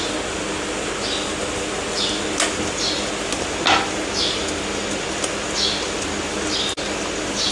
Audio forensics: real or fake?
real